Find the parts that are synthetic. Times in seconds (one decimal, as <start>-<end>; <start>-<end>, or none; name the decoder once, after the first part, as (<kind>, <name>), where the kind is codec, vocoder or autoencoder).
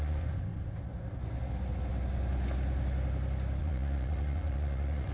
0.0-0.5 (vocoder, Vocos); 3.6-5.1